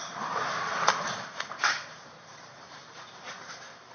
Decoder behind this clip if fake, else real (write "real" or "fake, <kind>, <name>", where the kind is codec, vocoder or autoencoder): fake, vocoder, BigVGAN v2